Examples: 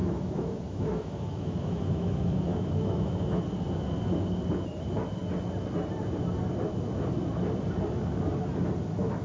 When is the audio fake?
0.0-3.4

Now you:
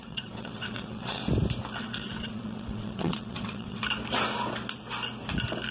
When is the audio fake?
0.0-1.2; 1.8-3.8